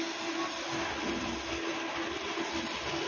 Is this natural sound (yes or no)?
yes